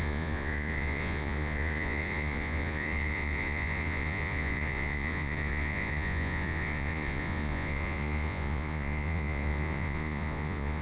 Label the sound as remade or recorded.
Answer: remade